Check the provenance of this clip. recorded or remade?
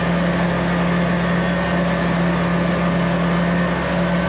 recorded